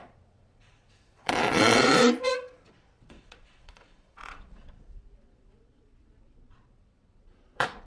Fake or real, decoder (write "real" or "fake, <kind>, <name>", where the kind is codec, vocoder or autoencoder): fake, vocoder, Vocos